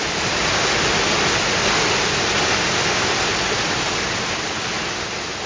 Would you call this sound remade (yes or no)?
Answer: no